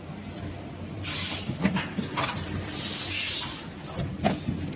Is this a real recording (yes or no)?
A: yes